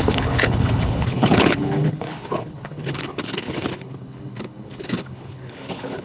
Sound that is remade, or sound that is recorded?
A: remade